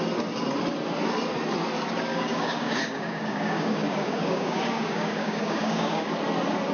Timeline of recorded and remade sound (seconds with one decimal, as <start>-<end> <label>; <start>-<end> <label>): 0.0-2.1 recorded; 2.1-6.1 remade; 6.1-6.7 recorded